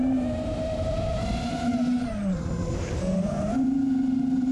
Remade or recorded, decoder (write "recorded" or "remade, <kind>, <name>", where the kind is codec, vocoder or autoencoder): remade, vocoder, BigVGAN v2